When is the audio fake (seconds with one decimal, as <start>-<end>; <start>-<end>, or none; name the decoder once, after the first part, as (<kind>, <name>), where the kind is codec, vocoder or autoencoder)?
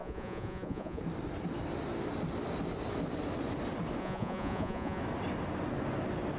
0.0-1.0 (vocoder, Vocos); 4.0-5.0